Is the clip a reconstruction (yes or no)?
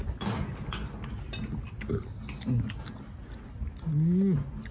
no